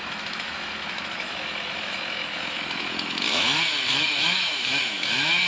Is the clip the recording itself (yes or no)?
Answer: no